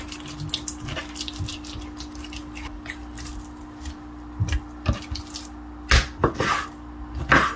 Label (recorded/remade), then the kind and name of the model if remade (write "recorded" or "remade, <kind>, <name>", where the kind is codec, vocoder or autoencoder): recorded